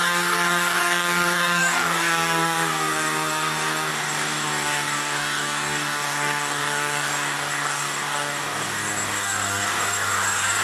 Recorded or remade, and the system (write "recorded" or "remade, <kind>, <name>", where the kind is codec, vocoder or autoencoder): remade, codec, DAC